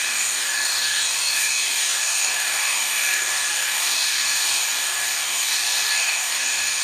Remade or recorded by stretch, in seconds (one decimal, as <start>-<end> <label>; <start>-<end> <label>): 0.0-6.8 remade